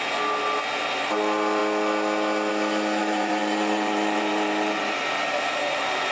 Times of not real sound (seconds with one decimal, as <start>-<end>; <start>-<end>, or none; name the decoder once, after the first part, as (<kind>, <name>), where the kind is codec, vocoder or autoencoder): 3.0-6.1 (vocoder, BigVGAN v2)